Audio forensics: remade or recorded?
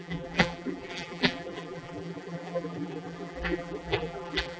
remade